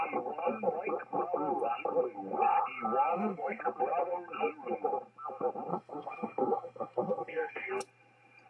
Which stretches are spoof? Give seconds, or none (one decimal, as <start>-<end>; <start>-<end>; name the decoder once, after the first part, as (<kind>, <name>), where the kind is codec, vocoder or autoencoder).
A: 3.1-3.6 (codec, SNAC); 5.7-7.7